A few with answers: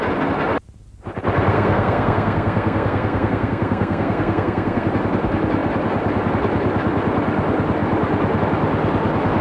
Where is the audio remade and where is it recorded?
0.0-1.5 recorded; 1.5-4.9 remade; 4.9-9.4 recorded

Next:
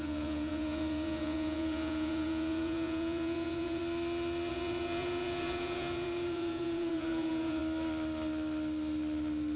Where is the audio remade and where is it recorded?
0.0-3.8 remade; 3.8-4.5 recorded; 4.5-7.6 remade; 7.6-9.6 recorded

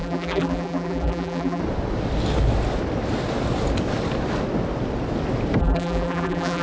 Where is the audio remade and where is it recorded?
0.0-1.6 remade; 1.6-5.6 recorded; 5.6-6.6 remade

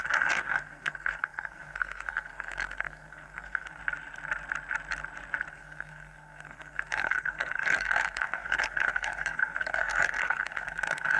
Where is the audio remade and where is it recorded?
0.0-3.8 remade; 3.8-5.5 recorded; 5.5-11.2 remade

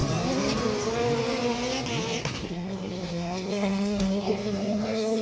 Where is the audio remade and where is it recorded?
0.0-2.2 recorded; 2.2-5.2 remade

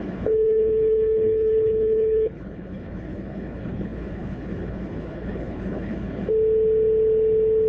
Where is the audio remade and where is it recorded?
0.0-6.2 remade; 6.2-7.7 recorded

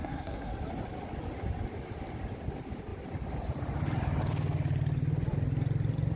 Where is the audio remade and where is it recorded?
0.0-0.5 remade; 0.5-6.2 recorded

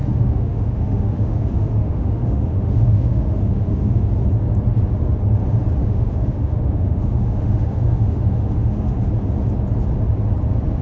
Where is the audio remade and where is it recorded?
0.0-4.1 remade; 4.1-5.8 recorded; 5.8-9.1 remade; 9.1-10.8 recorded